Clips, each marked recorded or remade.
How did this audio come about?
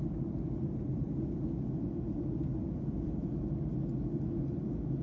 recorded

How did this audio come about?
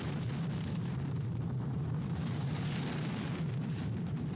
remade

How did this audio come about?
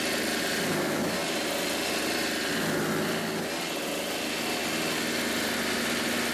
recorded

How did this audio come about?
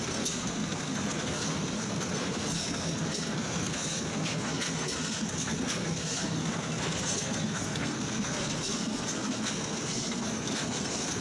remade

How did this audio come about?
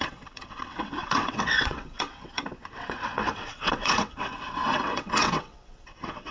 remade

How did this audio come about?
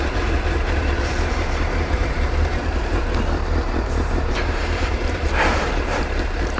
remade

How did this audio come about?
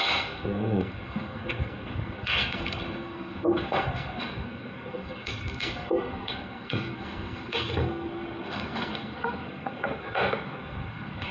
remade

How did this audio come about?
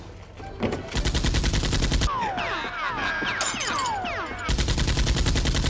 recorded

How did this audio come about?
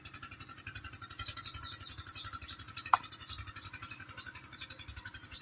recorded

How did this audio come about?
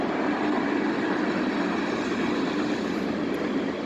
recorded